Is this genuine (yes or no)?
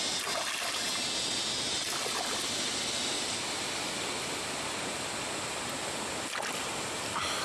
yes